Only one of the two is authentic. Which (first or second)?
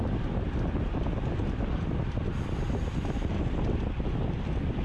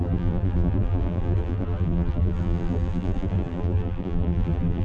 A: first